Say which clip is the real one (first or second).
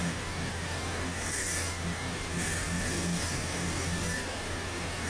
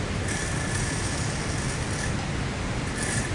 second